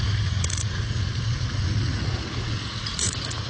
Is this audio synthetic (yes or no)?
yes